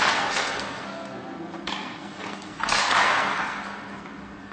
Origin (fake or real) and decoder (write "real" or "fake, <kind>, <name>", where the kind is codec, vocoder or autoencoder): fake, codec, SNAC